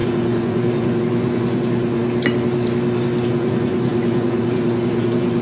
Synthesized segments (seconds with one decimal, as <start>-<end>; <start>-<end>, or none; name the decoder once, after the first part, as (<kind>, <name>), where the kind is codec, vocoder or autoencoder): 0.0-2.0 (vocoder, Vocos); 3.3-5.4